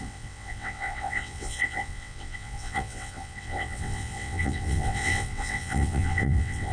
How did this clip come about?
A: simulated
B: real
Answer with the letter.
A